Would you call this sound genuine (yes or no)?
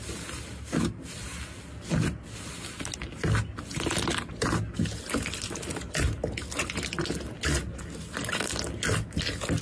yes